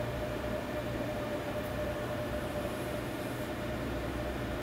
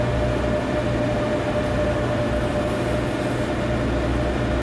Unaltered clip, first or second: second